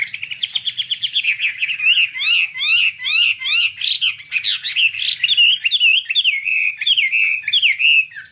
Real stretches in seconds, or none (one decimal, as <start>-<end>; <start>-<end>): 0.0-2.7; 3.4-6.5; 7.1-8.3